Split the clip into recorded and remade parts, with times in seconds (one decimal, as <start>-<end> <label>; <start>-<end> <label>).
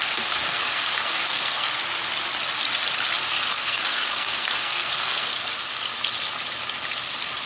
0.0-1.8 remade; 1.8-3.3 recorded; 3.3-5.5 remade; 5.5-7.5 recorded